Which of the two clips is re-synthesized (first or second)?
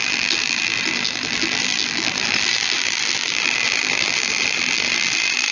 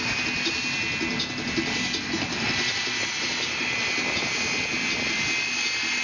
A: first